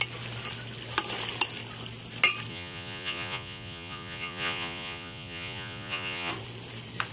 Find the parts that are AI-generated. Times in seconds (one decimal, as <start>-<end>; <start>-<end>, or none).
2.5-6.3

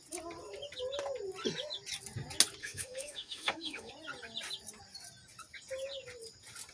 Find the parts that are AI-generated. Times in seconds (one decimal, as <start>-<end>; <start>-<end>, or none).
2.6-3.9

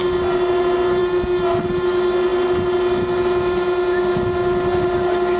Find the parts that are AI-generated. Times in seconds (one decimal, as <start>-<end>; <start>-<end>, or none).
none

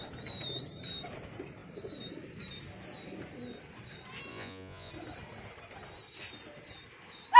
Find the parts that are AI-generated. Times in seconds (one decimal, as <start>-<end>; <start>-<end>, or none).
4.3-4.9